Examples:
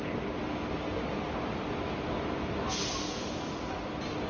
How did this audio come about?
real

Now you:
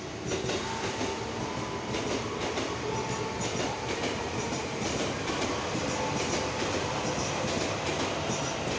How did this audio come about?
real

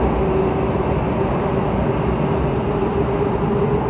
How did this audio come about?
real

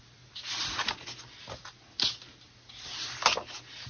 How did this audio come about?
real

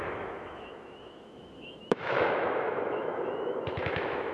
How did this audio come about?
fake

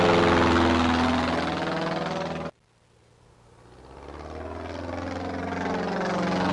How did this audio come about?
real